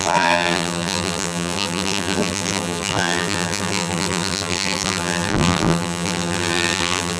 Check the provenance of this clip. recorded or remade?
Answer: remade